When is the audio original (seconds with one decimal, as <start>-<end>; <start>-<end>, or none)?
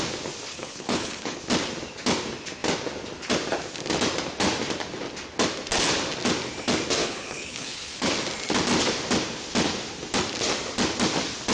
0.0-0.5; 1.4-7.0; 8.1-11.5